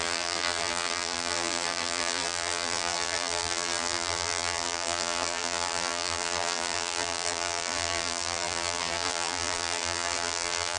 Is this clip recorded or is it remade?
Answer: remade